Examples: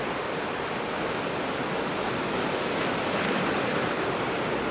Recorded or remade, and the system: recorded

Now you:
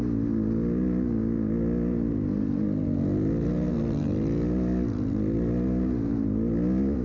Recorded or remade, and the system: recorded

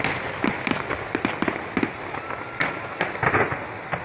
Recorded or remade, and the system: recorded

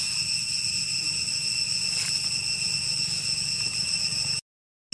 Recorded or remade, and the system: recorded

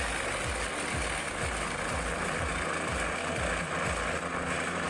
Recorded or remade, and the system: recorded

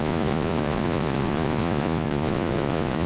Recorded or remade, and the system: remade, vocoder, Vocos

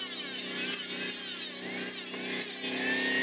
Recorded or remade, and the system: recorded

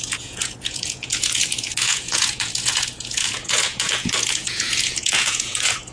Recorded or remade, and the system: remade, vocoder, Vocos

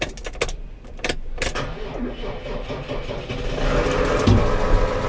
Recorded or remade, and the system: recorded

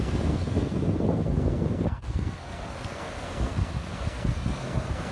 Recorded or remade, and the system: remade, codec, SNAC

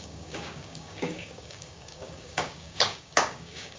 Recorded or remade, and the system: remade, codec, DAC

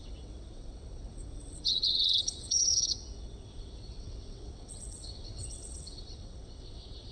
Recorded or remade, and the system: remade, vocoder, WaveNeXt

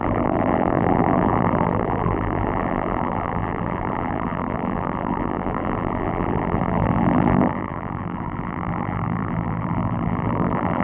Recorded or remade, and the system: remade, vocoder, BigVGAN v2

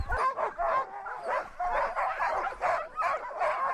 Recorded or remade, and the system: recorded